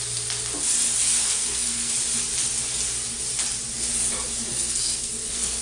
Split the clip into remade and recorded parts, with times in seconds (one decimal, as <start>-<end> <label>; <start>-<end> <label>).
0.0-1.2 recorded; 1.2-1.9 remade; 1.9-4.5 recorded; 4.5-5.6 remade